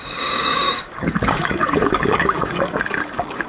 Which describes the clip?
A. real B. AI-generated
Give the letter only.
B